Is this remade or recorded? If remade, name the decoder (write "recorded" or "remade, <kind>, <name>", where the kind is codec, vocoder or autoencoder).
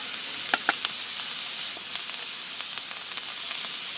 recorded